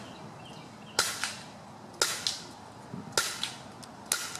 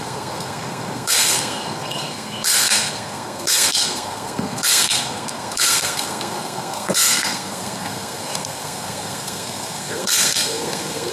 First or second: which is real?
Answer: first